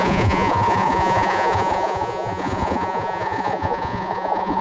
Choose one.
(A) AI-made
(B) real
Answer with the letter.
A